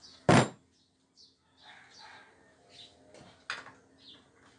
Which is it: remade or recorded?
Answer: recorded